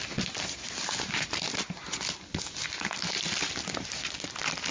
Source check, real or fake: real